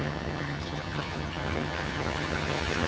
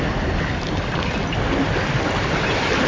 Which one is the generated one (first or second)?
first